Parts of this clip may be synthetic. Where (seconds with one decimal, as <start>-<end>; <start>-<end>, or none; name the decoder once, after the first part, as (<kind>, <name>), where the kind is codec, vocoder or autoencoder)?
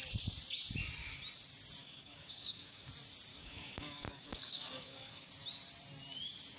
1.8-2.9 (codec, DAC); 3.3-5.3